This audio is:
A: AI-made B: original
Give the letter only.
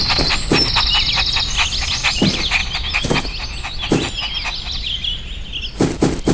B